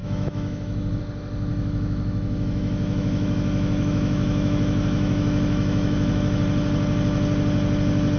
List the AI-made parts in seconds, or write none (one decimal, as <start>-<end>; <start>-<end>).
0.0-1.0; 1.5-6.4